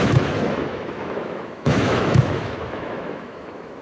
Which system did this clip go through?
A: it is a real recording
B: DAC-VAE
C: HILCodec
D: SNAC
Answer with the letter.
B